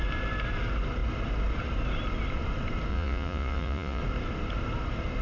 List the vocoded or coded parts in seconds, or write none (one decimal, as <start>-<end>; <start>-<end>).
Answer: 2.9-4.0